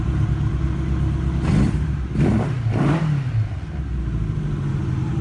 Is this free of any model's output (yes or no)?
yes